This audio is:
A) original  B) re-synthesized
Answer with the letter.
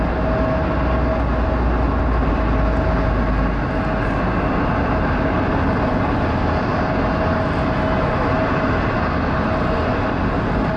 A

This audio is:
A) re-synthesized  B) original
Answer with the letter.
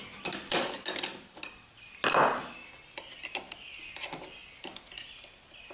B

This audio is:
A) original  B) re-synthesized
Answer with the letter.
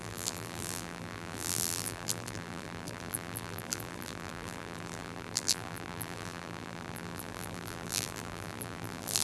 B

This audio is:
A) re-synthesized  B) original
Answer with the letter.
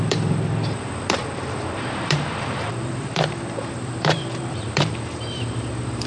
A